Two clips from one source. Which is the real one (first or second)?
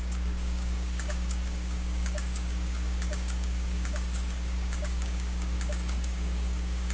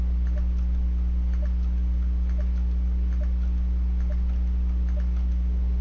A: second